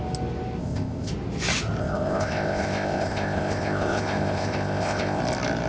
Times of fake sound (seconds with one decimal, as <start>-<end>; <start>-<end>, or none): 0.6-1.1; 1.8-5.2